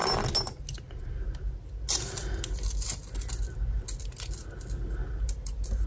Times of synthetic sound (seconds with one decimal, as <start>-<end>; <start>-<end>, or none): none